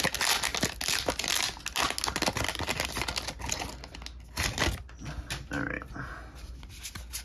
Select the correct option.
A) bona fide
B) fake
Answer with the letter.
A